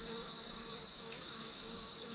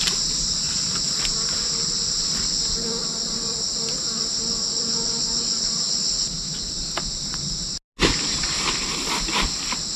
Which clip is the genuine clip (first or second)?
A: second